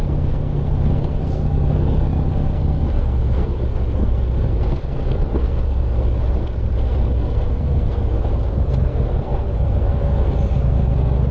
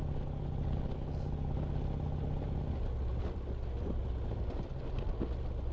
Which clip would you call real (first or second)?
second